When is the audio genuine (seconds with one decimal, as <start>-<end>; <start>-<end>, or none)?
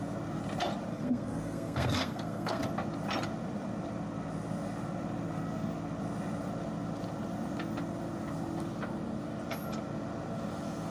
0.0-0.9; 2.6-10.9